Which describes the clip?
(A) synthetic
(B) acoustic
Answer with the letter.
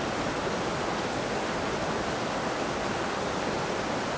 B